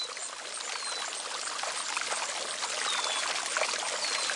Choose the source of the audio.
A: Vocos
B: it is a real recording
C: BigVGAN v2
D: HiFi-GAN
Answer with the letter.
B